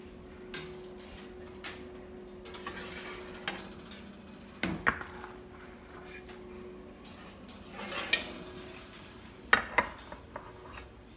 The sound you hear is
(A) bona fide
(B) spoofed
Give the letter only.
A